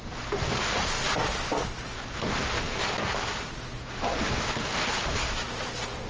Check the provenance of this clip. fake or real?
real